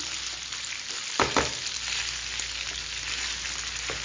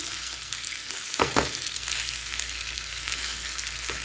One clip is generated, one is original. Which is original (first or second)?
first